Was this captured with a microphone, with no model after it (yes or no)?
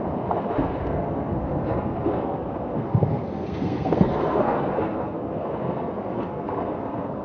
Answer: no